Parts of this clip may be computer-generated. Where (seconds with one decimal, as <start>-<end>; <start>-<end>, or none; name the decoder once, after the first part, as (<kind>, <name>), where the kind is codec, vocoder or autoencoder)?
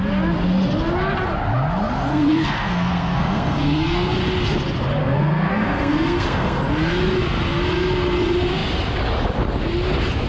2.1-4.1 (codec, SNAC); 5.0-6.6